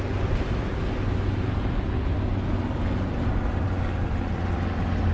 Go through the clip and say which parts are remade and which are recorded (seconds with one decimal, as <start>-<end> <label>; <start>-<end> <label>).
0.0-5.1 recorded